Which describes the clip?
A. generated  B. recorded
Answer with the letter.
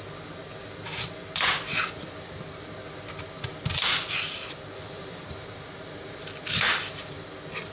B